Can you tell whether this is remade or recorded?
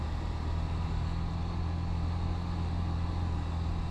recorded